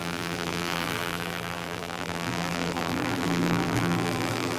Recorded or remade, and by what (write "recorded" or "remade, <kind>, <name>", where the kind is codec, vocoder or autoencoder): remade, vocoder, BigVGAN v2